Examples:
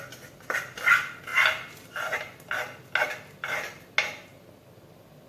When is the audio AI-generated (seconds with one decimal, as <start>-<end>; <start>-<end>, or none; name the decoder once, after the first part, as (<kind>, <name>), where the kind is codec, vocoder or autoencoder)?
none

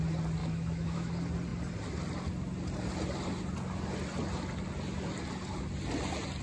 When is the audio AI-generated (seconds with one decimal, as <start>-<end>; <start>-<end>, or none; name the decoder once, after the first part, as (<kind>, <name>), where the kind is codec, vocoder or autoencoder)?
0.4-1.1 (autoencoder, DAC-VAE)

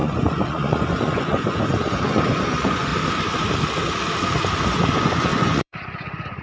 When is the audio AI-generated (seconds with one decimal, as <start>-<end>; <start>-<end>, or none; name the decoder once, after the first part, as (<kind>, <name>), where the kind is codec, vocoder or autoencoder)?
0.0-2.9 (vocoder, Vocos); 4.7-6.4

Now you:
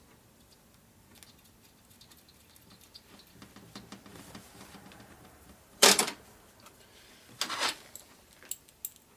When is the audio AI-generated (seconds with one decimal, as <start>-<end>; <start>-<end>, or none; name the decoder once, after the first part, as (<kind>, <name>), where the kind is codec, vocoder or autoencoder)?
4.1-6.0 (vocoder, BigVGAN v2)

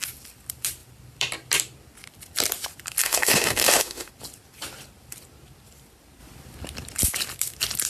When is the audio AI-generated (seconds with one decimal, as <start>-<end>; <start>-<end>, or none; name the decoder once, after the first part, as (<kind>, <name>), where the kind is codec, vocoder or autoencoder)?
3.0-4.1 (autoencoder, DAC-VAE)

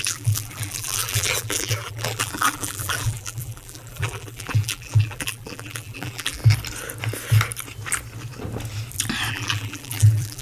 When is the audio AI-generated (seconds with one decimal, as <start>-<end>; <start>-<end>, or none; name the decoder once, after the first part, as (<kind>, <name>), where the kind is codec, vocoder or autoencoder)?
0.0-6.4 (vocoder, BigVGAN v2); 9.3-10.4